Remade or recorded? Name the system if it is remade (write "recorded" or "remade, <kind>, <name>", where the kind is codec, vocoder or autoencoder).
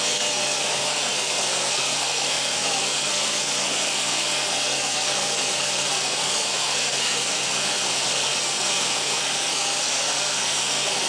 remade, codec, SNAC